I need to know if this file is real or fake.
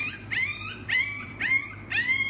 fake